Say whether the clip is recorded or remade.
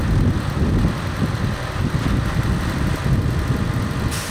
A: recorded